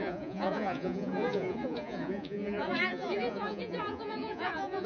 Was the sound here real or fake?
fake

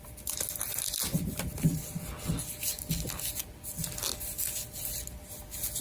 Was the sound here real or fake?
real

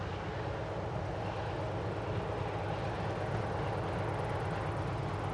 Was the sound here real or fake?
real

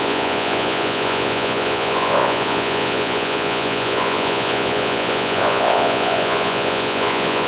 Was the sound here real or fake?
fake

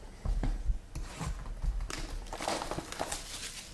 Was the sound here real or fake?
real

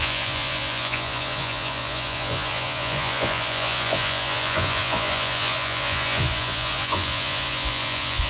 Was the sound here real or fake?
fake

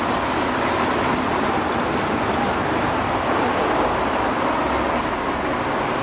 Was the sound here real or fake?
real